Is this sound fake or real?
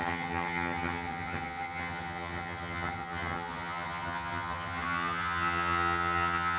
fake